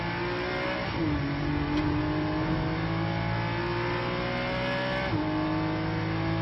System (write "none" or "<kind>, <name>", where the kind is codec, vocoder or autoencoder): none